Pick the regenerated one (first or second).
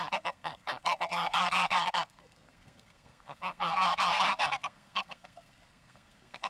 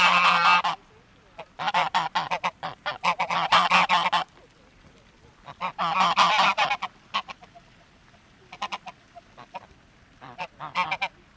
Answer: first